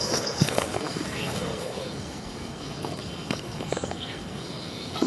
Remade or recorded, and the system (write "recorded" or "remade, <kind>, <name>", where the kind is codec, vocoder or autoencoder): remade, codec, SNAC